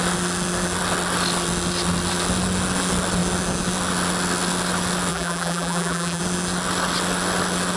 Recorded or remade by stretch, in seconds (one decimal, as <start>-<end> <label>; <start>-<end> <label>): 0.0-5.1 recorded; 5.1-6.2 remade; 6.2-7.8 recorded